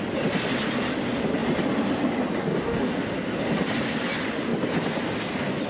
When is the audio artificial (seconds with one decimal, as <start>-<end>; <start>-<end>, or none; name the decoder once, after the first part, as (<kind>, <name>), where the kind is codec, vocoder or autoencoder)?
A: 2.4-2.9 (codec, DAC)